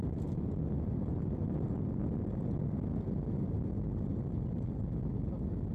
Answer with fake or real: real